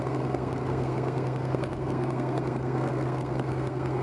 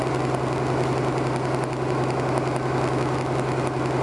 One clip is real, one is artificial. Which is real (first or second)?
second